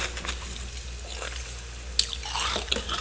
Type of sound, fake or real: real